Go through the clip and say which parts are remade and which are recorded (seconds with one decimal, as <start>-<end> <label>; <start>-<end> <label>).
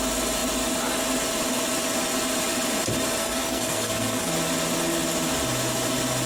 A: 0.0-3.2 recorded; 3.2-4.3 remade; 4.3-6.3 recorded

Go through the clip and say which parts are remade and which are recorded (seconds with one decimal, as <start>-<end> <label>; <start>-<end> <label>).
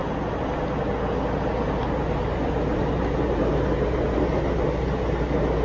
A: 0.0-5.6 recorded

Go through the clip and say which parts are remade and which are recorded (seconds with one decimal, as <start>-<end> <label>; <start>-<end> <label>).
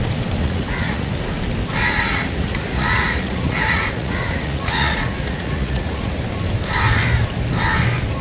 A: 0.0-0.4 recorded; 0.4-1.1 remade; 1.1-1.8 recorded; 1.8-6.2 remade; 6.2-8.2 recorded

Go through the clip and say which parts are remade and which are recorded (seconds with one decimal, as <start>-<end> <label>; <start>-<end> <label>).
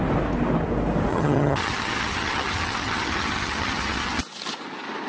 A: 0.0-1.1 recorded; 1.1-4.2 remade; 4.2-5.1 recorded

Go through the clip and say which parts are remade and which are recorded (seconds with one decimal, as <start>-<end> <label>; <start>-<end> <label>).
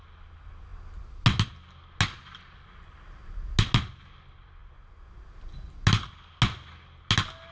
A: 0.0-7.5 recorded